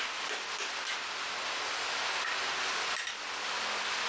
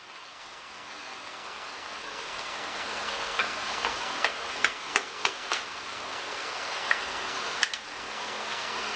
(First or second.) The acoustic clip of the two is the first